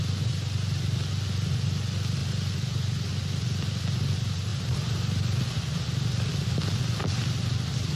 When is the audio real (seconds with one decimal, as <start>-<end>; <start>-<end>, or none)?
0.0-8.0